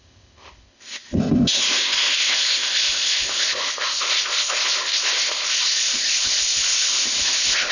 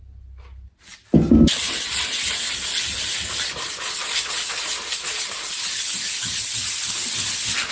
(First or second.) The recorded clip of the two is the second